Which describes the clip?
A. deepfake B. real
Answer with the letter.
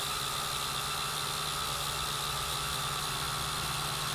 B